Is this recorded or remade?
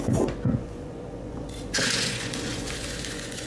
remade